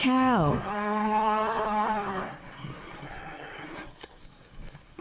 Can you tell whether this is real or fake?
fake